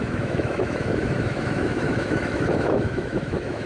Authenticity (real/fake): fake